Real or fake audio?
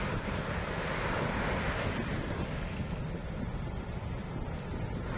real